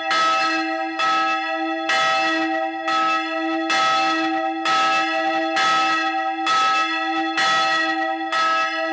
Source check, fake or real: real